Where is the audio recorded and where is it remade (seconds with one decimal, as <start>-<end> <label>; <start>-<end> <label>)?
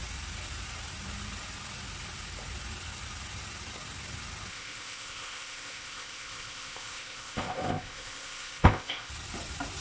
0.0-4.5 recorded; 4.5-9.1 remade; 9.1-9.8 recorded